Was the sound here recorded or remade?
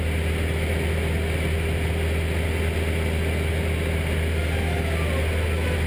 recorded